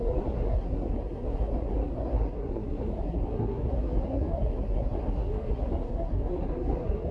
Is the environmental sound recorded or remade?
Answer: remade